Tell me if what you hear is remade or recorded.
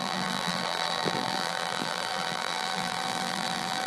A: remade